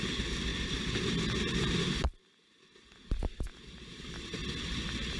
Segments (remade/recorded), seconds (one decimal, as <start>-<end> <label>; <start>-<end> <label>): 0.0-0.5 remade; 0.5-3.6 recorded; 3.6-4.4 remade; 4.4-5.2 recorded